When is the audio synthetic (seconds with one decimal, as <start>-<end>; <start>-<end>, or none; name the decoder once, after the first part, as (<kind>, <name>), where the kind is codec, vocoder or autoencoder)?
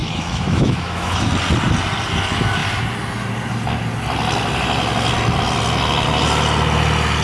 0.0-1.3 (autoencoder, DAC-VAE)